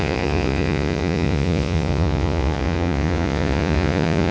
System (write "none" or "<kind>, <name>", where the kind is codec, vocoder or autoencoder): vocoder, Vocos